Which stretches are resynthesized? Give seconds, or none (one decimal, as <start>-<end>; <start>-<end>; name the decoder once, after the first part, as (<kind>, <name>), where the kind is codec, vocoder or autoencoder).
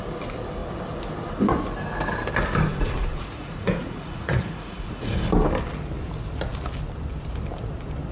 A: 2.7-5.2 (vocoder, Vocos)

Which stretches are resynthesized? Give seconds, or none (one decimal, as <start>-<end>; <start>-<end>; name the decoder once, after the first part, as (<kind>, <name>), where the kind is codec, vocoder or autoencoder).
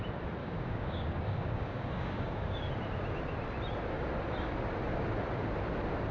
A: 0.4-2.7 (codec, DAC)